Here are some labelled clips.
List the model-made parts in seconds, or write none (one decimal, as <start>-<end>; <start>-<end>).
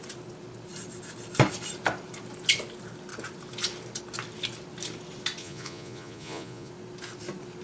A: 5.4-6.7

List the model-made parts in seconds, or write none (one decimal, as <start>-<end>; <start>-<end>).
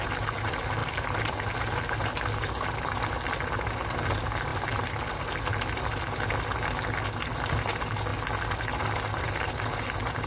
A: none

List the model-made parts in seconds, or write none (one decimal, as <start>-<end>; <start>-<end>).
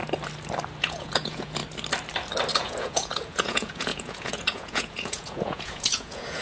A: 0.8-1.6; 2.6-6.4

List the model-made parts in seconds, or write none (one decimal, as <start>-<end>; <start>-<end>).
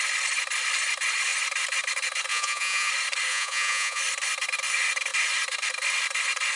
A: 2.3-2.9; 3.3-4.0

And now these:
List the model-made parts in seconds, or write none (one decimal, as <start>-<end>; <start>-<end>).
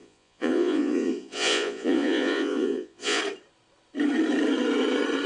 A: 0.0-3.2